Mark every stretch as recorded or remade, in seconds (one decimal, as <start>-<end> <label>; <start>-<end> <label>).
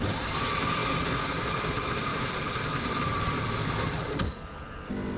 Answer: 0.0-0.8 remade; 0.8-1.3 recorded; 1.3-5.2 remade